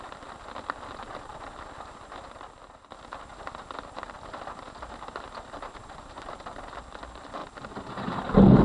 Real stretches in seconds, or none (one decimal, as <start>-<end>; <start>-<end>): 0.0-8.6